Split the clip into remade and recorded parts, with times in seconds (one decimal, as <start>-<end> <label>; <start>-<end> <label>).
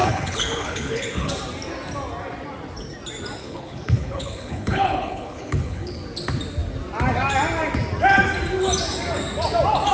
0.0-1.3 remade; 1.3-3.4 recorded; 3.4-6.0 remade; 6.0-9.9 recorded